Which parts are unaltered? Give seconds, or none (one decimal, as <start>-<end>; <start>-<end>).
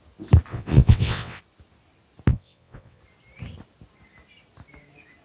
0.0-0.5; 1.4-2.3; 3.0-5.2